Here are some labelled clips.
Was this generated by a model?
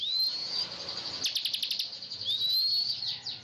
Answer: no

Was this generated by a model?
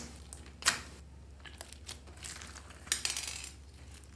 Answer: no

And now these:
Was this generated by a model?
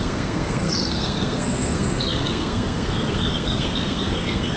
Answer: yes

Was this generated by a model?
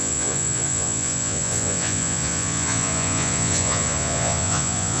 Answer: yes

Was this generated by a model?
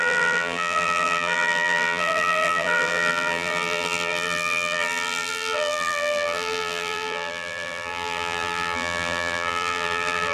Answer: yes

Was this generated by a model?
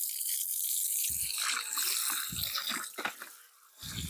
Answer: no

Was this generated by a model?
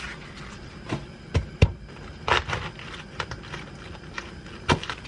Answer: no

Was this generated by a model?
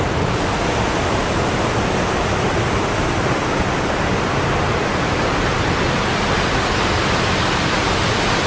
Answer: no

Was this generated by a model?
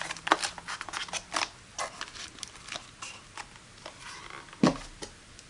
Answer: no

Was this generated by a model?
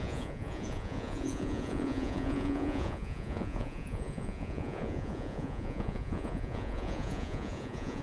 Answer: yes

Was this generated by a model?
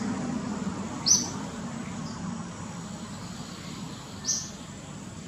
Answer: no